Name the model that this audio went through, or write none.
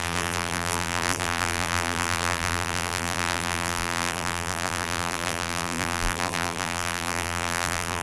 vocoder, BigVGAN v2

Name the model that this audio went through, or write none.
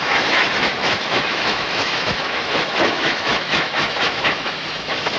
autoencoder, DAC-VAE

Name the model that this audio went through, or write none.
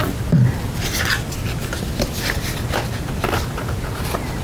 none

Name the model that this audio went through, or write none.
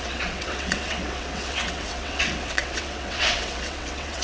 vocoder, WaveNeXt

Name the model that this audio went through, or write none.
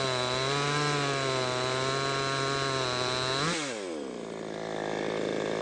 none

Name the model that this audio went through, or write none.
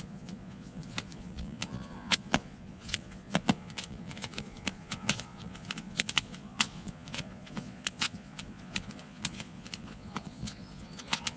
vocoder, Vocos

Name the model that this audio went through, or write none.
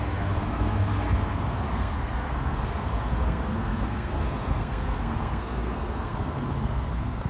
codec, SNAC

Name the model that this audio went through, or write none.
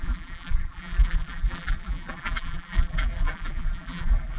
vocoder, BigVGAN v2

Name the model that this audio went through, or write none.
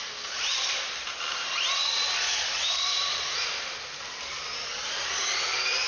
none